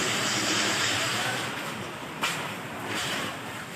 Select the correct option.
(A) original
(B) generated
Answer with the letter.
B